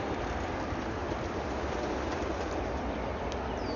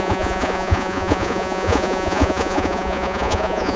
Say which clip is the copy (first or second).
second